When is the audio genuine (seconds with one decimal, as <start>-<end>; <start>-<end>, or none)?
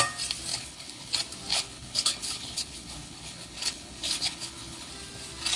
0.0-0.5; 1.1-1.5; 4.9-5.6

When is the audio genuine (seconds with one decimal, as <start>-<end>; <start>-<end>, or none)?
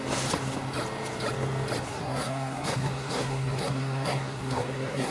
0.0-1.9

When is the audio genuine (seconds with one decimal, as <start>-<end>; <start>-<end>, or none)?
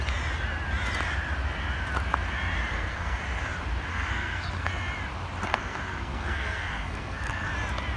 0.0-2.7; 3.2-3.9; 4.7-5.5; 7.5-8.0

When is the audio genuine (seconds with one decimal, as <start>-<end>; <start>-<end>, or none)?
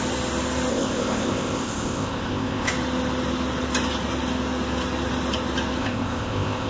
0.0-0.7; 2.7-5.8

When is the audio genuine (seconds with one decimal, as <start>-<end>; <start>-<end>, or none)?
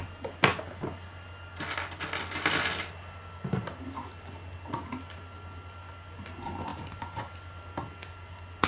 0.0-6.7; 7.3-8.7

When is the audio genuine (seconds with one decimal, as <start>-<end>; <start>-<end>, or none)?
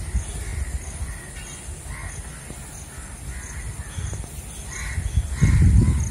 0.0-6.1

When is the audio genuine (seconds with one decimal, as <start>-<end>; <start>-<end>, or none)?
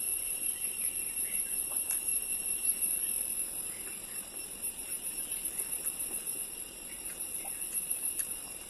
2.1-6.4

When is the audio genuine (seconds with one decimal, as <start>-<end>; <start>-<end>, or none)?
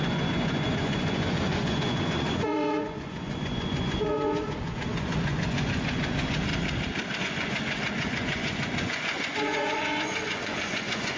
6.5-7.2